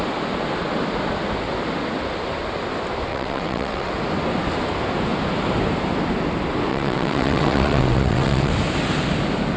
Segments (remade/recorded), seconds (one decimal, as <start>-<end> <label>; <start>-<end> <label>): 0.0-3.1 recorded; 3.1-3.9 remade; 3.9-6.7 recorded; 6.7-8.5 remade; 8.5-9.6 recorded